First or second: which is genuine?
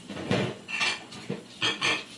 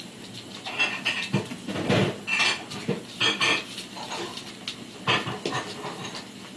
second